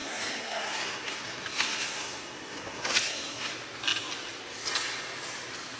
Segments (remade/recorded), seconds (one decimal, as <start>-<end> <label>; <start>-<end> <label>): 0.0-3.5 remade; 3.5-5.8 recorded